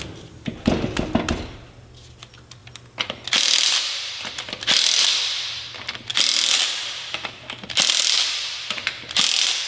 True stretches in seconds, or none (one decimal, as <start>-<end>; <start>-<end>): 0.0-9.7